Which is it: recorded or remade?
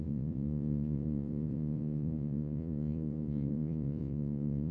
remade